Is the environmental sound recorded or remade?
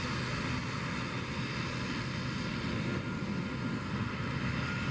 recorded